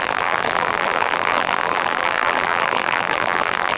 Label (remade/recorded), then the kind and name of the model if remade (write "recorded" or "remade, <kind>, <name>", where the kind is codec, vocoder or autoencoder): remade, vocoder, BigVGAN v2